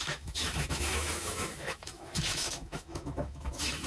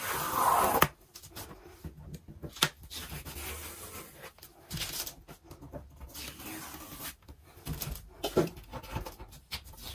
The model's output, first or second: first